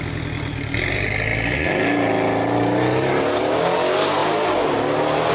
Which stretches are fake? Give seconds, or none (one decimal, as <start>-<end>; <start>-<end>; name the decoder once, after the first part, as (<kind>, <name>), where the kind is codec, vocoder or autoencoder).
none